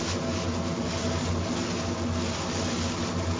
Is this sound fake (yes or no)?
no